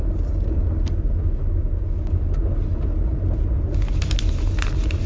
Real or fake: real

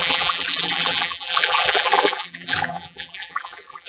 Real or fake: fake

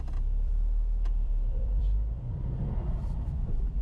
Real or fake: fake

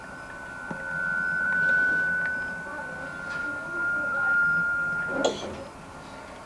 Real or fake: real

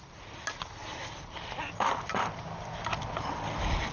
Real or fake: real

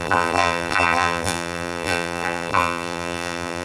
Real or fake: fake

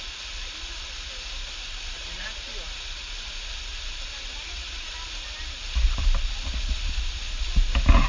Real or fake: real